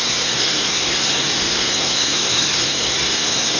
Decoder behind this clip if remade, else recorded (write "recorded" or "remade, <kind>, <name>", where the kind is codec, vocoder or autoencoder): remade, codec, SNAC